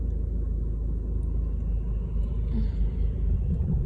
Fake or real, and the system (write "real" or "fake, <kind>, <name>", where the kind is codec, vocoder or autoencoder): real